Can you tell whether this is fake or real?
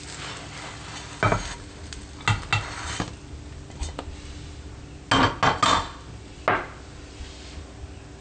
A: real